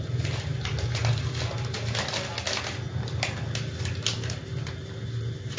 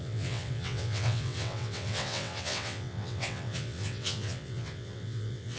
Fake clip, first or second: second